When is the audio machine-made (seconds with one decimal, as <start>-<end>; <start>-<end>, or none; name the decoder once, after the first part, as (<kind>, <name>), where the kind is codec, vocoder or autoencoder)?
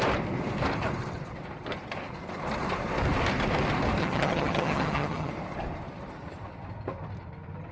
4.0-5.3 (vocoder, HiFi-GAN)